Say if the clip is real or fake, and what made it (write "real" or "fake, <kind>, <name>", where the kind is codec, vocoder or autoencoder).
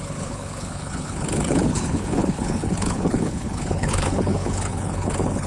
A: fake, codec, HILCodec